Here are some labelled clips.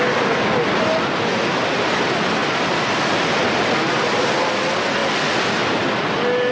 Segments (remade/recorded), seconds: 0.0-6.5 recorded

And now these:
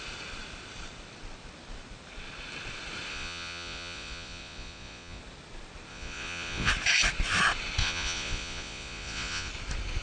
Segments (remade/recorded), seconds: 0.0-3.1 recorded; 3.1-5.2 remade; 5.2-5.9 recorded; 5.9-6.7 remade; 6.7-7.8 recorded; 7.8-9.5 remade; 9.5-10.0 recorded

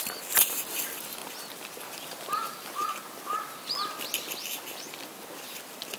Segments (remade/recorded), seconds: 0.0-6.0 recorded

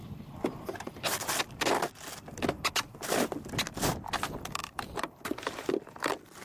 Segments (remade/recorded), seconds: 0.0-4.6 recorded; 4.6-6.0 remade; 6.0-6.4 recorded

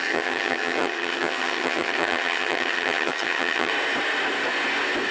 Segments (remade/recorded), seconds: 0.0-3.7 remade; 3.7-5.1 recorded

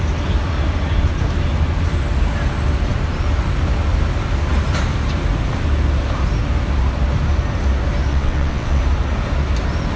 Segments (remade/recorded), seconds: 0.0-8.1 recorded; 8.1-8.8 remade; 8.8-10.0 recorded